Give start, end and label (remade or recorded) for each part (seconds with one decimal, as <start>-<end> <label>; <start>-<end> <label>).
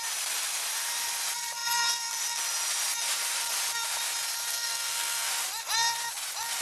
0.0-4.5 recorded; 4.5-5.3 remade; 5.3-6.6 recorded